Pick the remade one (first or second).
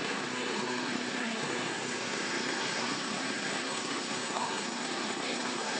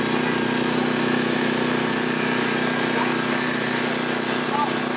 first